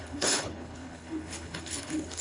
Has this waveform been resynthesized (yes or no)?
yes